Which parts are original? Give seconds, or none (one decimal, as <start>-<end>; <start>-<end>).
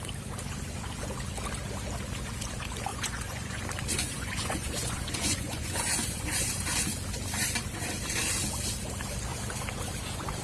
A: 0.0-2.9; 3.6-4.0; 6.5-10.4